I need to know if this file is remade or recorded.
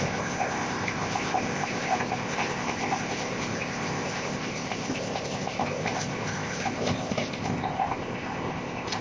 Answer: remade